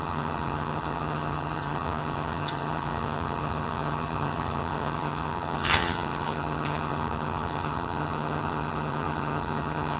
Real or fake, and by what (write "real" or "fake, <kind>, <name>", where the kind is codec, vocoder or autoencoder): fake, vocoder, HiFi-GAN